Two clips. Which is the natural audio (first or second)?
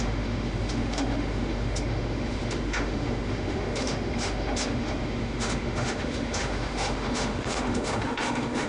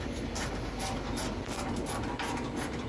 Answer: second